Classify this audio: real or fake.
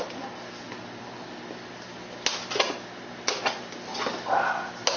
real